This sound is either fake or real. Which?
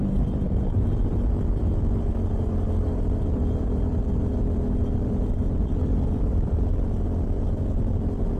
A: fake